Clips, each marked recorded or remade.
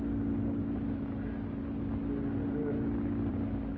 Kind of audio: recorded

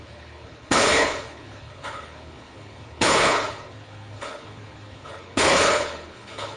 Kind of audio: remade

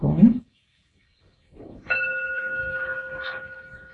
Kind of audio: remade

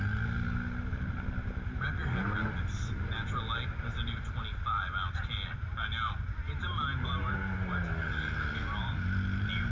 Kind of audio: recorded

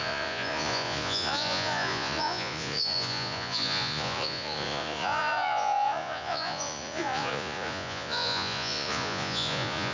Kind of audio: remade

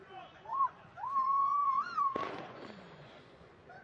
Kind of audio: remade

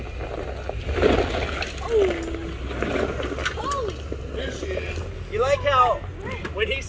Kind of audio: recorded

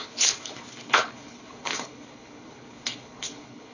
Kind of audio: remade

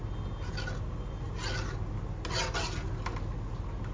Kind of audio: recorded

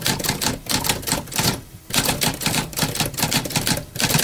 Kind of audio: remade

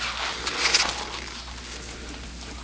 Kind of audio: recorded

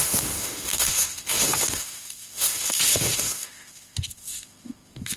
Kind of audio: remade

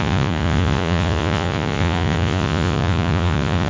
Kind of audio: remade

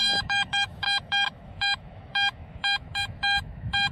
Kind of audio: remade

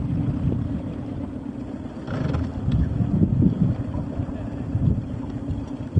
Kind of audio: recorded